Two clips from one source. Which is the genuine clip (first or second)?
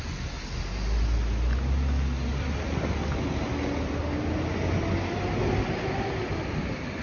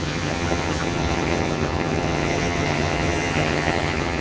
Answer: first